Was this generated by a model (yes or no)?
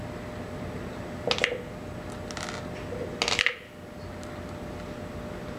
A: no